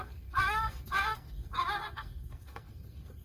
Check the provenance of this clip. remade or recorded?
remade